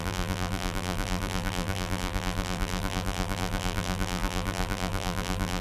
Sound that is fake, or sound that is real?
fake